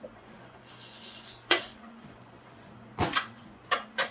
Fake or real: fake